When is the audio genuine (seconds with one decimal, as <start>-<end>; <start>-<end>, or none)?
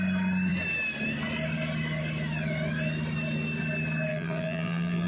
0.0-4.1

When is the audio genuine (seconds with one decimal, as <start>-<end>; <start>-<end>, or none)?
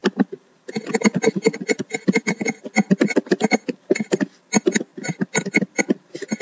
0.0-6.4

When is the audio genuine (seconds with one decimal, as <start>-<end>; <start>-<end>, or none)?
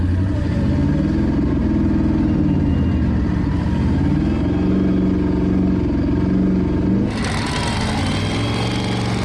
0.0-9.2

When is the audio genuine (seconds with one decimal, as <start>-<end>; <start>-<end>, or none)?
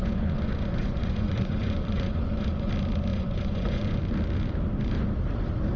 2.7-3.1; 4.0-5.8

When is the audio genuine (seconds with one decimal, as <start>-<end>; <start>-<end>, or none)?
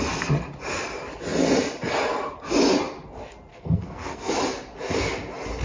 0.0-3.5; 4.3-5.6